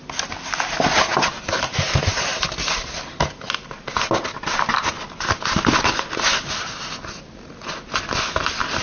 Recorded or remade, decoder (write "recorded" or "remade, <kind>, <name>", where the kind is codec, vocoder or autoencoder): recorded